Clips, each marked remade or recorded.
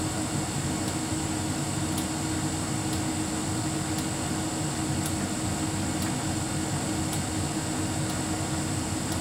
recorded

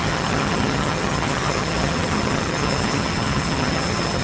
remade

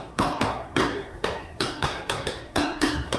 remade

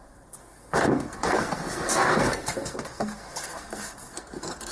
remade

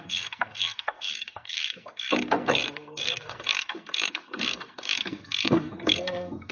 remade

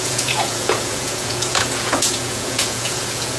remade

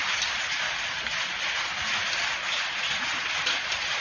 recorded